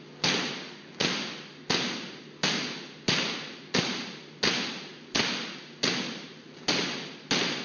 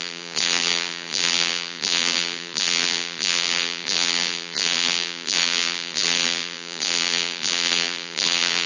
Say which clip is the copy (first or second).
second